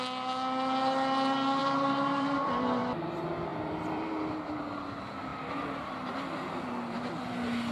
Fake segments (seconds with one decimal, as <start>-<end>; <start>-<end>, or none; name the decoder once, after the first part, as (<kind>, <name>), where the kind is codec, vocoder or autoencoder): 1.6-2.8 (vocoder, BigVGAN v2); 3.5-4.6